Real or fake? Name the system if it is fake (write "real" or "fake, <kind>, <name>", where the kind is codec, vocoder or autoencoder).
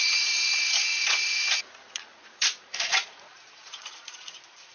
fake, vocoder, Vocos